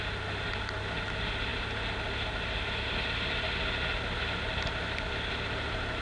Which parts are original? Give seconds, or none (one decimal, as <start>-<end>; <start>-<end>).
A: 0.0-6.0